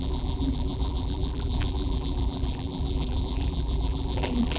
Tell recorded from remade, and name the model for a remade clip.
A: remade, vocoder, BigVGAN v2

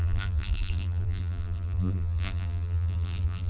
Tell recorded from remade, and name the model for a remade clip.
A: remade, vocoder, BigVGAN v2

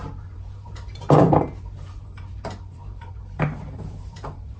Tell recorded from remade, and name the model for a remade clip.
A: remade, vocoder, BigVGAN v2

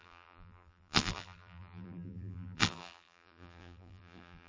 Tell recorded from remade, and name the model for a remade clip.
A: remade, vocoder, BigVGAN v2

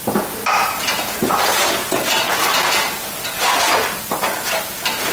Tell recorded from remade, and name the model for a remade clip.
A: recorded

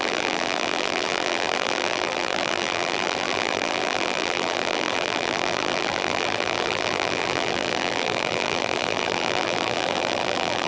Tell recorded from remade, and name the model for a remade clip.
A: remade, vocoder, BigVGAN v2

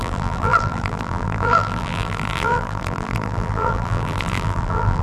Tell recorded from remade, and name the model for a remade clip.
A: remade, vocoder, BigVGAN v2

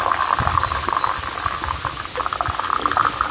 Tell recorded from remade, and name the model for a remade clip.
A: recorded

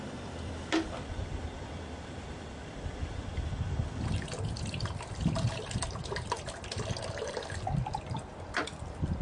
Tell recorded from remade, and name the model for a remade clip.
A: remade, vocoder, BigVGAN v2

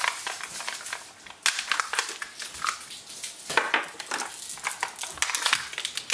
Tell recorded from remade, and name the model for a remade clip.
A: recorded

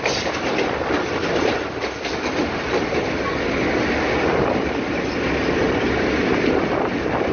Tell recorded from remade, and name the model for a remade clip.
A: recorded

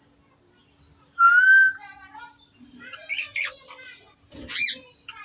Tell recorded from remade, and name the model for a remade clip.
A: recorded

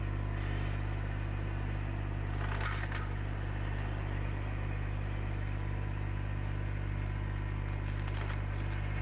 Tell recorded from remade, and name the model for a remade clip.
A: recorded